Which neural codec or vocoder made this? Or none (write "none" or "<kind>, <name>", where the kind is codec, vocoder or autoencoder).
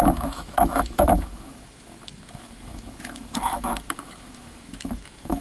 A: autoencoder, DAC-VAE